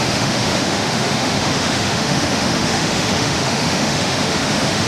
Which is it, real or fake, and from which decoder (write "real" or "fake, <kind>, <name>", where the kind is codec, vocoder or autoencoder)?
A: fake, autoencoder, DAC-VAE